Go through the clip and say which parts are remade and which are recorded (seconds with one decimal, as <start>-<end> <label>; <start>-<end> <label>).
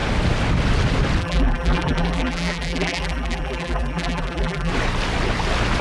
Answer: 0.0-1.2 recorded; 1.2-4.7 remade; 4.7-5.8 recorded